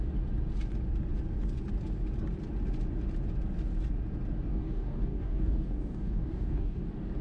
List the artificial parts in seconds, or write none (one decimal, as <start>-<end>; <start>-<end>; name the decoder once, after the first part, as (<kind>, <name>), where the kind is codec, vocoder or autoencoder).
4.5-6.8 (codec, DAC)